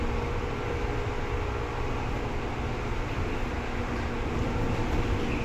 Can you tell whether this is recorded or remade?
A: recorded